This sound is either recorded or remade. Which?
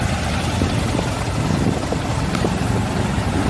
recorded